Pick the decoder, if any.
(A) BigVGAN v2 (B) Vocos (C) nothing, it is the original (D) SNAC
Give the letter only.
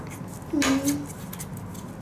C